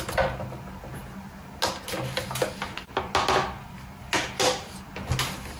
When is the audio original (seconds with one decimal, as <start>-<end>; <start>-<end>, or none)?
0.0-5.6